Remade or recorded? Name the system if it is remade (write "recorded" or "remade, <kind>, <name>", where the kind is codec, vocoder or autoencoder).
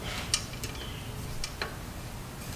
recorded